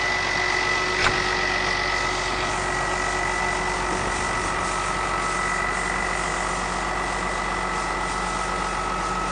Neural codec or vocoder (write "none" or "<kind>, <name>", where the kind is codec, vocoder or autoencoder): none